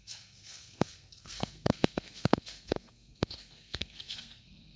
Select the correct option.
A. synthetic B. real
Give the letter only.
A